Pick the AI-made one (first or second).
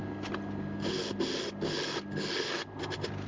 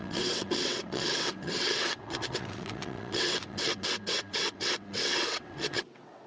second